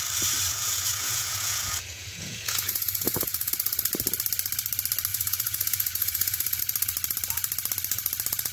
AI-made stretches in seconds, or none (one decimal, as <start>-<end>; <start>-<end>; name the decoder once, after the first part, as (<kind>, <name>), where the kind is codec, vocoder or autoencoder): 0.5-3.5 (vocoder, Vocos); 5.1-6.6